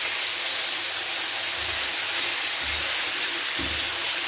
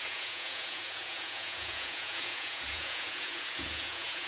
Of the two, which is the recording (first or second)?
first